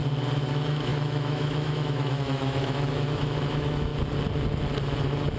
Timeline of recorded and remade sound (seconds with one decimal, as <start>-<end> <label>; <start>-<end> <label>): 0.0-0.5 recorded; 0.5-3.9 remade; 3.9-5.4 recorded